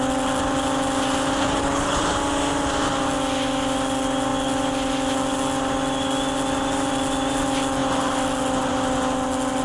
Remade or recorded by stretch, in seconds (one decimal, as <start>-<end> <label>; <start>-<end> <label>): 0.0-1.4 recorded; 1.4-2.0 remade; 2.0-9.6 recorded